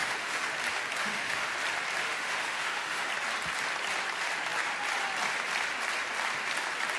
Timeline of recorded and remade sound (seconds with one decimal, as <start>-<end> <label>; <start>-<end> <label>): 0.0-0.5 remade; 0.5-1.0 recorded; 1.0-1.5 remade; 1.5-2.0 recorded; 2.0-3.1 remade; 3.1-7.0 recorded